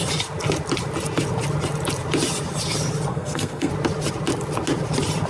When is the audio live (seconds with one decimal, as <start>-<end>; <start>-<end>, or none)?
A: 0.0-3.1; 3.7-5.3